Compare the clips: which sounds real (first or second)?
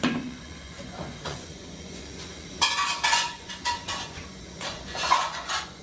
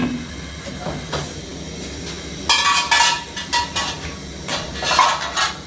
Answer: second